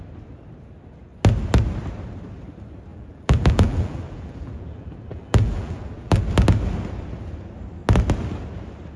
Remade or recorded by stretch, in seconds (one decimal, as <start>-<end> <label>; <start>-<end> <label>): 0.0-2.9 recorded; 2.9-6.2 remade; 6.2-9.0 recorded